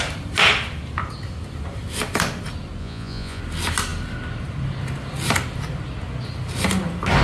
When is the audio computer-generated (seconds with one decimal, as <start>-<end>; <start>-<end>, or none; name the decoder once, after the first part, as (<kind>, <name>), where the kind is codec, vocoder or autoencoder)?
2.8-3.4 (vocoder, Vocos)